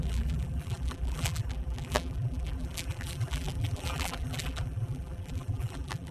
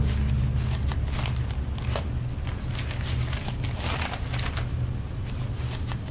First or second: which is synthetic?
first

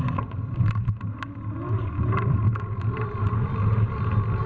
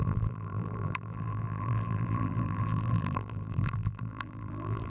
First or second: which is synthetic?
second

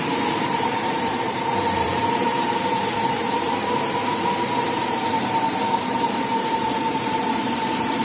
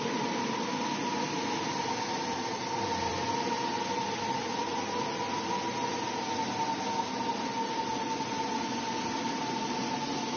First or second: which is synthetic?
first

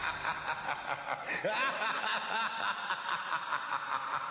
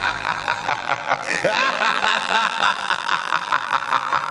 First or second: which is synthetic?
second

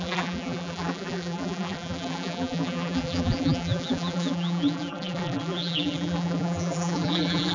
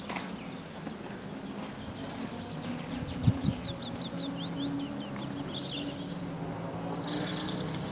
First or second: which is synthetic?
first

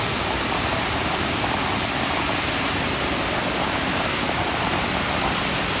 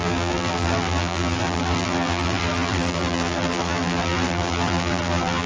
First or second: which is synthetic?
second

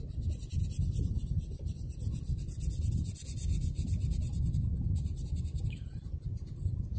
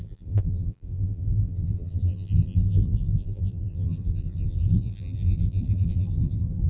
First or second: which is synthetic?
second